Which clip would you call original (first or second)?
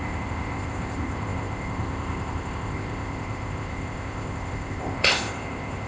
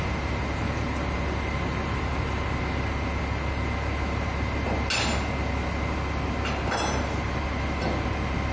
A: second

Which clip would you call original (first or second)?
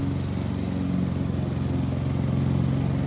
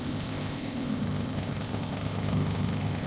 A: first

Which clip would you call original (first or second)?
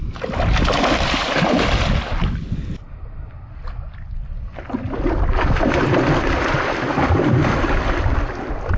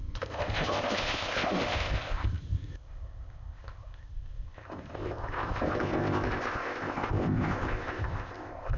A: first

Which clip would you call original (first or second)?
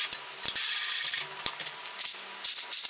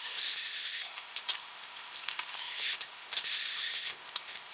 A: first